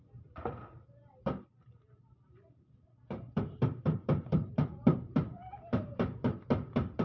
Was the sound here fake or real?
fake